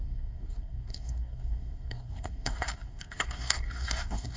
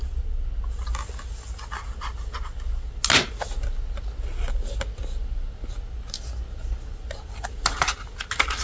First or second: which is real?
second